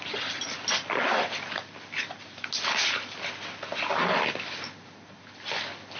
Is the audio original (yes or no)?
yes